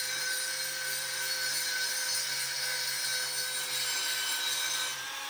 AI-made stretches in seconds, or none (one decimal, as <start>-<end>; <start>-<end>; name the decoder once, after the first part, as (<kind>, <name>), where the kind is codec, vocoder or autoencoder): 0.0-3.1 (vocoder, BigVGAN v2); 3.7-5.3